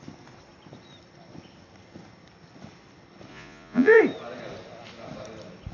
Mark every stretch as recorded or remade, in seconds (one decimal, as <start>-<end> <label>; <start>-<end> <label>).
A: 0.0-3.3 recorded; 3.3-4.0 remade; 4.0-5.7 recorded